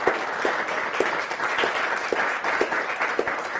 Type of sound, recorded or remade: recorded